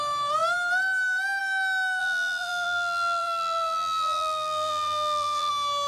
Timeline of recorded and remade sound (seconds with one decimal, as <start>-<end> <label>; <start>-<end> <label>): 0.0-2.0 recorded; 2.0-5.5 remade; 5.5-5.9 recorded